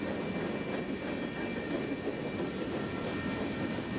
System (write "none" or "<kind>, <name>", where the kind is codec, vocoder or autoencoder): none